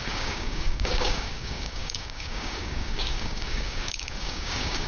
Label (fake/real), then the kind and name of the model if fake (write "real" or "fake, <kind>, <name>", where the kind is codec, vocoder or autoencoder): fake, codec, DAC